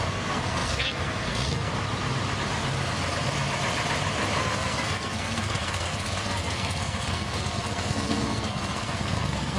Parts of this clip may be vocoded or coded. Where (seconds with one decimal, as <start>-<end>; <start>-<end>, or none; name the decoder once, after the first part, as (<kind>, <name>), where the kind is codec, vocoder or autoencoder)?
0.0-1.7 (codec, SNAC); 4.4-9.6